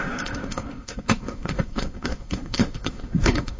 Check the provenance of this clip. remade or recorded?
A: remade